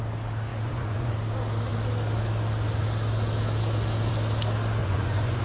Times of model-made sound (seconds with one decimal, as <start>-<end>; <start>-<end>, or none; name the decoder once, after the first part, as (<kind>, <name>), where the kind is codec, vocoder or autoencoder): 0.5-1.1 (vocoder, Vocos); 4.8-5.4